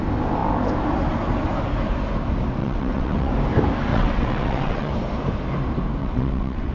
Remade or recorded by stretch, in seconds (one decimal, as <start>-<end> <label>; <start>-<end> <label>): 0.0-2.6 recorded; 2.6-3.3 remade; 3.3-3.9 recorded; 3.9-4.9 remade; 4.9-6.0 recorded; 6.0-6.7 remade